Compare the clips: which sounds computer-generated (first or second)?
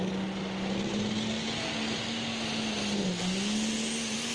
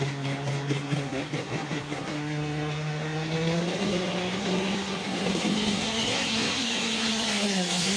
second